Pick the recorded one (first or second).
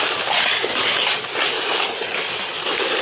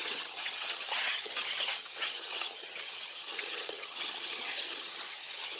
first